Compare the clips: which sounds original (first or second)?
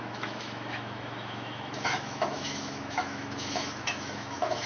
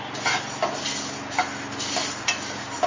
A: second